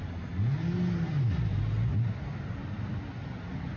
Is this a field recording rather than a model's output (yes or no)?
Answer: yes